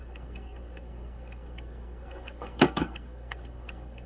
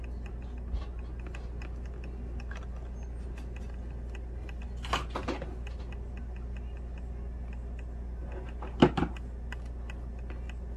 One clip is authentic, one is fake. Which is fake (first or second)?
first